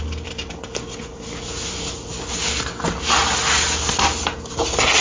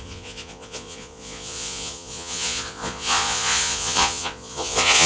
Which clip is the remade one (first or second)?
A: second